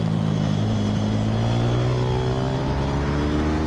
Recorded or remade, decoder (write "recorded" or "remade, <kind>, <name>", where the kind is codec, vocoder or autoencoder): recorded